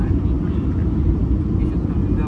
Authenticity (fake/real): real